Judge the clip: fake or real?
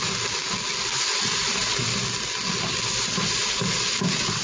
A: real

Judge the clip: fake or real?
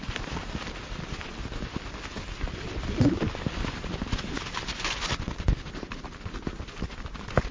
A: real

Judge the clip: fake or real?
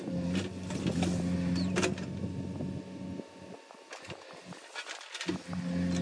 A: real